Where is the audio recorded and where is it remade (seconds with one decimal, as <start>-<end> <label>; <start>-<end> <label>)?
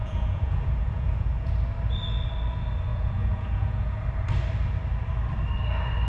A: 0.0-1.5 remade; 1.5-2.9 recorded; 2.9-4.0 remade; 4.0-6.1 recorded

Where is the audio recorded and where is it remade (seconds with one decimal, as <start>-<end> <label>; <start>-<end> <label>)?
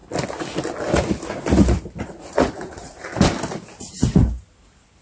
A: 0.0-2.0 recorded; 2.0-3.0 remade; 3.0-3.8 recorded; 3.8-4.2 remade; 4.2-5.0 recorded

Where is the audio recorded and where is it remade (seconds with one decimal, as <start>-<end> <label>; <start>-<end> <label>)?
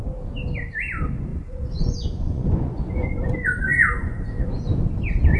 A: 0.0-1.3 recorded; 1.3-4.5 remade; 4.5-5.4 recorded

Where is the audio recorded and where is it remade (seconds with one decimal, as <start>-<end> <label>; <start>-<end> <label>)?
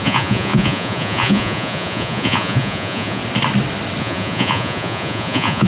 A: 0.0-3.2 remade; 3.2-4.0 recorded; 4.0-5.7 remade